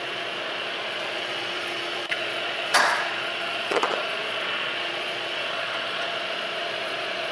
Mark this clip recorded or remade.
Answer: remade